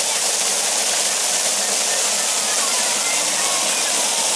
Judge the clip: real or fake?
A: real